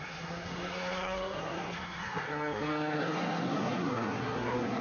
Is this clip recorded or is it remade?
remade